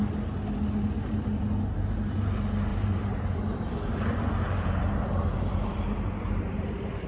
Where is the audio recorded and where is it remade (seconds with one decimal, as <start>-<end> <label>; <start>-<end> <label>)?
0.0-2.7 recorded; 2.7-6.6 remade; 6.6-7.1 recorded